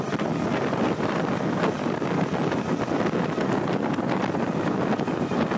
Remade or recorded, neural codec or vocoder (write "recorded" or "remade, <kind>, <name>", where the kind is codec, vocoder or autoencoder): recorded